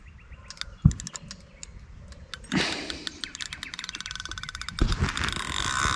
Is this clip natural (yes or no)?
yes